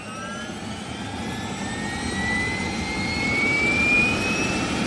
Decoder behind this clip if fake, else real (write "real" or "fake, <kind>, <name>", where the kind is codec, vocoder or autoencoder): real